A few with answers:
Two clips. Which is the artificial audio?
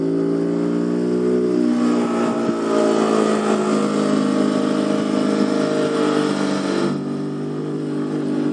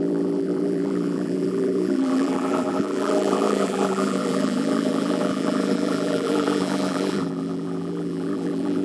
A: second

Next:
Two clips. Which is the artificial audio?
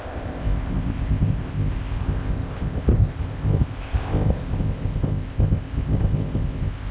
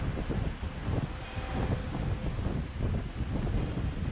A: first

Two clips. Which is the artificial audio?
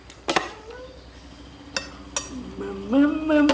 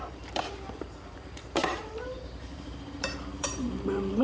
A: second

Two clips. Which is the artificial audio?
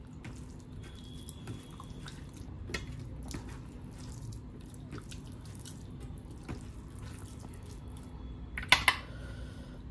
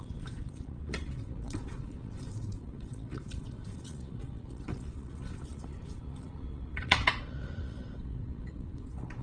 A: second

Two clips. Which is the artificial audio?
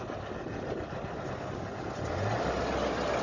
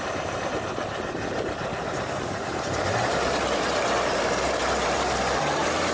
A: second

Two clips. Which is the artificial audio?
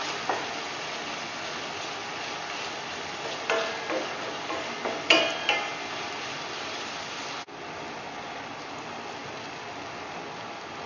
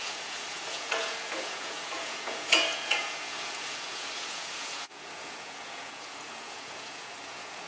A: second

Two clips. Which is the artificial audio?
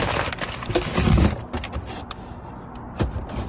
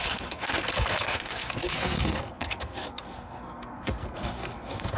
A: second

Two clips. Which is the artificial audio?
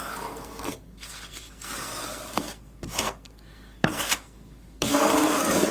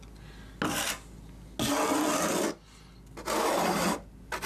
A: first